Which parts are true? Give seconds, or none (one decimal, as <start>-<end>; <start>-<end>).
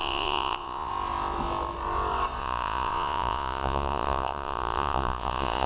0.9-2.4